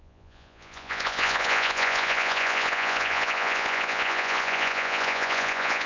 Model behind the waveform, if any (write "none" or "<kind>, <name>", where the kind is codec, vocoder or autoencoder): vocoder, Vocos